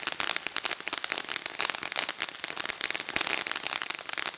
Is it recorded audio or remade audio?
recorded